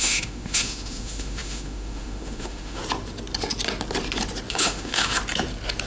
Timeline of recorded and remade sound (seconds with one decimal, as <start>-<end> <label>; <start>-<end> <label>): 0.0-2.8 remade; 2.8-4.5 recorded; 4.5-5.2 remade; 5.2-5.9 recorded